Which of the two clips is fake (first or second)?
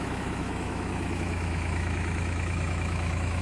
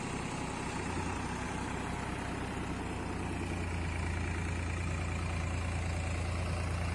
first